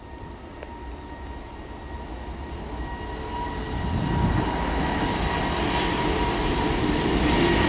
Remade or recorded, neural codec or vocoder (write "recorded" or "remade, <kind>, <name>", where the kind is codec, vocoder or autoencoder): recorded